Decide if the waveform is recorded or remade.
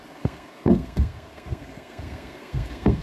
remade